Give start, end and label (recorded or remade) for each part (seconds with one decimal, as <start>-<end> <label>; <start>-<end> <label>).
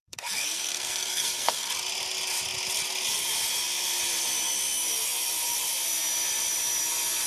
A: 0.0-1.7 remade; 1.7-7.3 recorded